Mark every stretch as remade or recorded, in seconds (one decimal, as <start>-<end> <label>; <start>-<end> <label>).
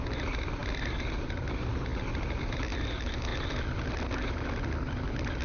0.0-5.4 recorded